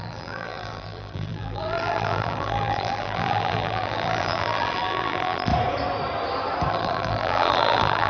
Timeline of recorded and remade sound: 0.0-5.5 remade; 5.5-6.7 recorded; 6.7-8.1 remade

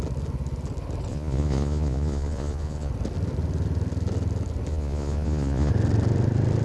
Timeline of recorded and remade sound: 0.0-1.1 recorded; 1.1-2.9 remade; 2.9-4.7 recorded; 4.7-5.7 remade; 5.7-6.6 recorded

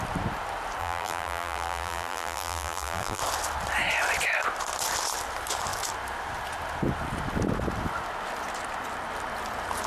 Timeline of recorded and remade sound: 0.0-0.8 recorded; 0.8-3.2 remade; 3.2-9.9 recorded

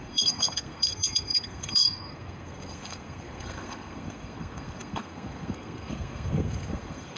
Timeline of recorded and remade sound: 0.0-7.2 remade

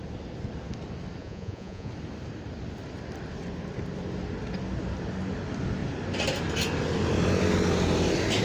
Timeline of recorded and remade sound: 0.0-1.2 recorded; 1.2-1.9 remade; 1.9-8.4 recorded

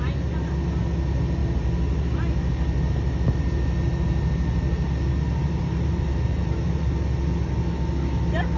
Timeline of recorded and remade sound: 0.0-5.4 recorded; 5.4-6.9 remade; 6.9-8.6 recorded

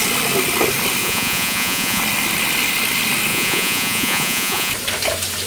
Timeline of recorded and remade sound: 0.0-1.0 recorded; 1.0-2.0 remade; 2.0-3.3 recorded; 3.3-4.7 remade; 4.7-5.5 recorded

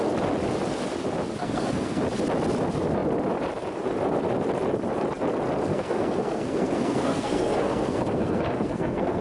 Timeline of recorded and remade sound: 0.0-1.4 recorded; 1.4-2.0 remade; 2.0-5.7 recorded; 5.7-9.2 remade